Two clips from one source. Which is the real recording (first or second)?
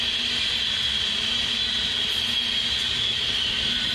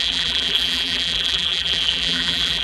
first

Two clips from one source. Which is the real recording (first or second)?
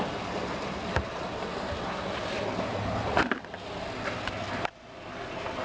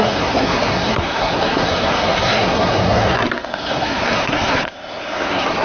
first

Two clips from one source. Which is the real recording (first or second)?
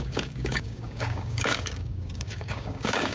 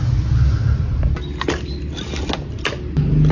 second